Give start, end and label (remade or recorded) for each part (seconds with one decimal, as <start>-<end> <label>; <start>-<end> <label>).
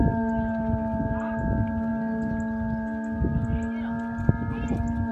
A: 0.0-5.1 recorded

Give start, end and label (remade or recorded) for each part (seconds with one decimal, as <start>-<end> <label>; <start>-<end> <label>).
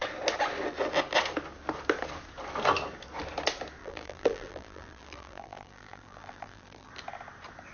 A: 0.0-3.8 recorded; 3.8-6.9 remade; 6.9-7.7 recorded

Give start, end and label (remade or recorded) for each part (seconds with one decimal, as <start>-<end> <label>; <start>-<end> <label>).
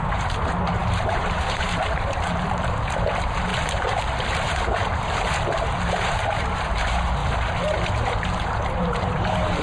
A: 0.0-7.2 remade; 7.2-7.9 recorded; 7.9-9.6 remade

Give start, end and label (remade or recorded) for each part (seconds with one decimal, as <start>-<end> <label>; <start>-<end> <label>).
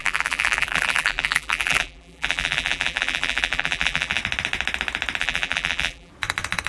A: 0.0-4.2 remade; 4.2-5.2 recorded; 5.2-6.1 remade; 6.1-6.7 recorded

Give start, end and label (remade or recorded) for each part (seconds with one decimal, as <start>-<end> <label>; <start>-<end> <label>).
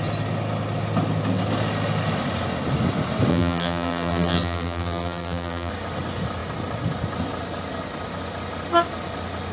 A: 0.0-3.3 recorded; 3.3-5.7 remade; 5.7-9.5 recorded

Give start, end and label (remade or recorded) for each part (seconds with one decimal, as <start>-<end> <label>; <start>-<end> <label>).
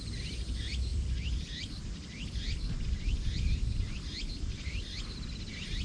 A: 0.0-0.9 recorded; 0.9-4.4 remade; 4.4-5.8 recorded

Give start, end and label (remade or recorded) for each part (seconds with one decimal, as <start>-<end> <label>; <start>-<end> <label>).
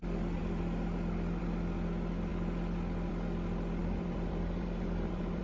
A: 0.0-3.8 recorded; 3.8-5.4 remade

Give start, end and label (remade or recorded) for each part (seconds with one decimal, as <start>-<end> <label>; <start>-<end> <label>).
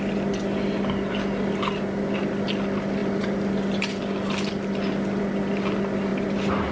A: 0.0-3.0 recorded; 3.0-4.5 remade; 4.5-6.7 recorded